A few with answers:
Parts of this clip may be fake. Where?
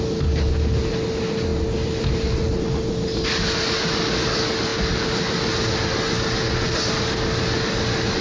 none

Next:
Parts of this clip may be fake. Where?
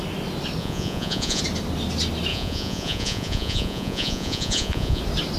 0.6-1.4 (vocoder, Vocos); 2.3-5.0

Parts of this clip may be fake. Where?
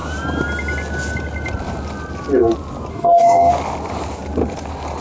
2.9-3.5 (codec, DAC)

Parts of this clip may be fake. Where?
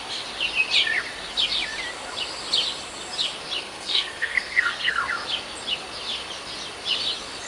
3.6-5.0 (codec, SNAC)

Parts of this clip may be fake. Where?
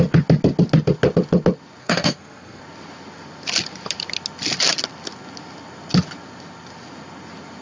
1.8-2.6 (codec, SNAC)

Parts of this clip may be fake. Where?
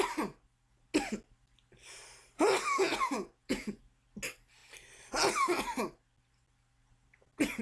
2.8-3.8 (vocoder, Vocos)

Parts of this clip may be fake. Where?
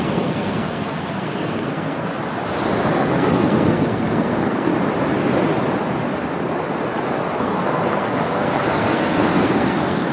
0.0-2.1 (codec, SNAC); 2.9-4.7; 7.4-10.1